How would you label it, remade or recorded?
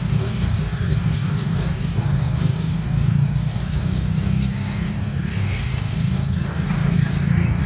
remade